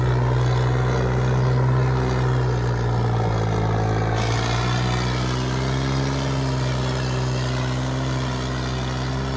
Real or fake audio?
real